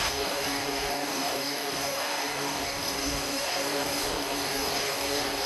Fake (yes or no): yes